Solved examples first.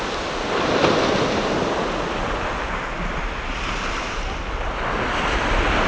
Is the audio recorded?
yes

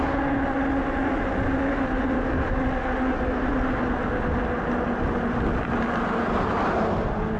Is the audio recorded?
yes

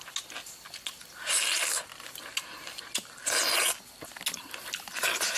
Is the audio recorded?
yes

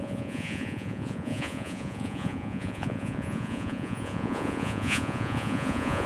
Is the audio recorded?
no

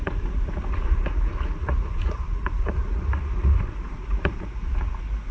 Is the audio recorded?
no